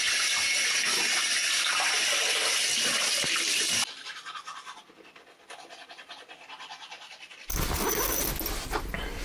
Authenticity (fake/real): real